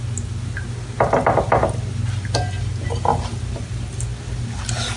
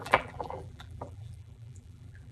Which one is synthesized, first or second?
second